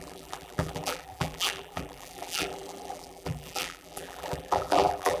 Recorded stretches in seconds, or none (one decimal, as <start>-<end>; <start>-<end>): none